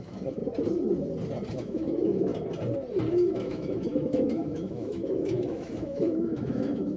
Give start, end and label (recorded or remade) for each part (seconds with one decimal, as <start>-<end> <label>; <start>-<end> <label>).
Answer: 0.0-0.4 remade; 0.4-1.5 recorded; 1.5-2.3 remade; 2.3-3.1 recorded; 3.1-7.0 remade